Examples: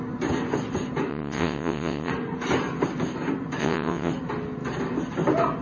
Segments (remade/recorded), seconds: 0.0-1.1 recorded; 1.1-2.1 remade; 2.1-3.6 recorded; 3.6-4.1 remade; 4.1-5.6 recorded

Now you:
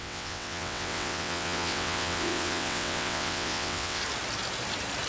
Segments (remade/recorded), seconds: 0.0-4.0 remade; 4.0-5.1 recorded

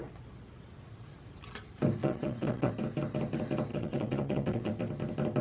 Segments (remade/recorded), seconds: 0.0-2.0 recorded; 2.0-2.7 remade; 2.7-3.7 recorded; 3.7-4.7 remade; 4.7-5.4 recorded

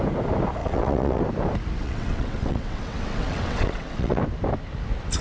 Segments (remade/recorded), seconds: 0.0-0.6 recorded; 0.6-1.2 remade; 1.2-1.8 recorded; 1.8-4.2 remade; 4.2-5.2 recorded